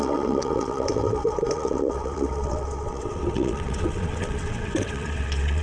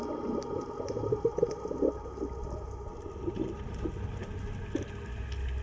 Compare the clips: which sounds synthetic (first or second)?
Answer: first